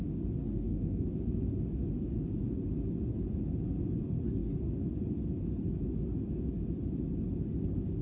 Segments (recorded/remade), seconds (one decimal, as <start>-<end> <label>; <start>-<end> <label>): 0.0-0.4 recorded; 0.4-1.2 remade; 1.2-8.0 recorded